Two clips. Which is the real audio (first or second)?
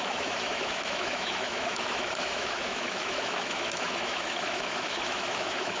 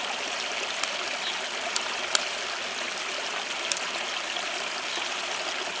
second